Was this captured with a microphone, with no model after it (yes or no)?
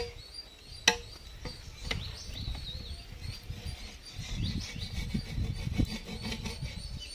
yes